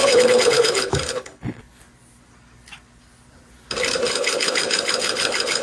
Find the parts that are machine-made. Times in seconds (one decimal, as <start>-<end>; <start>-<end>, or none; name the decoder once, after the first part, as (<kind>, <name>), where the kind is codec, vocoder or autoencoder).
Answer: 0.0-1.6 (codec, HILCodec); 4.1-5.6